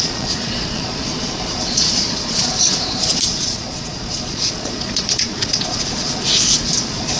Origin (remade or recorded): remade